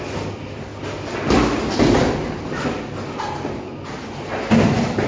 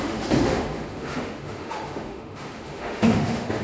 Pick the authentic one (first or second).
first